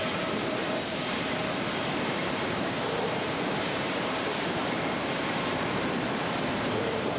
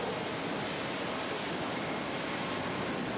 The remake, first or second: first